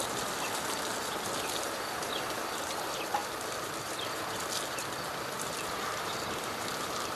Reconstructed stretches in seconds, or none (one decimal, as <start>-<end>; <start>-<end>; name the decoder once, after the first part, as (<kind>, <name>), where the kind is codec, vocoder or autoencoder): none